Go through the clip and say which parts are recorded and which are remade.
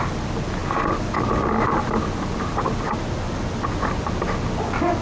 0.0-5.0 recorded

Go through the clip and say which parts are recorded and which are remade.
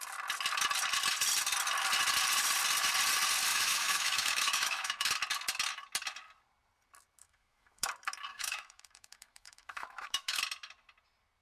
0.0-3.5 recorded; 3.5-5.1 remade; 5.1-7.2 recorded; 7.2-7.9 remade; 7.9-8.3 recorded; 8.3-10.4 remade; 10.4-11.4 recorded